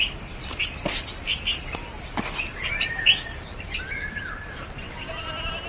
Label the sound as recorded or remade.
recorded